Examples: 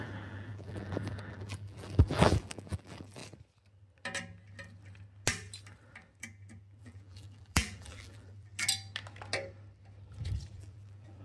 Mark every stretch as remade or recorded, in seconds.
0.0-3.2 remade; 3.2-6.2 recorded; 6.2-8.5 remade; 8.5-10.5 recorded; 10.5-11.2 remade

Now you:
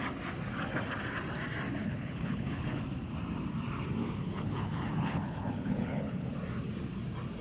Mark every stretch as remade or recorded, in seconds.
0.0-1.8 recorded; 1.8-2.8 remade; 2.8-4.0 recorded; 4.0-6.2 remade; 6.2-7.4 recorded

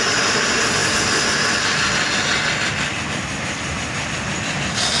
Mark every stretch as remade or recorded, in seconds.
0.0-5.0 recorded

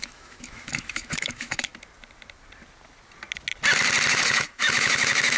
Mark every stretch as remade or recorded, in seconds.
0.0-1.7 remade; 1.7-4.1 recorded; 4.1-5.4 remade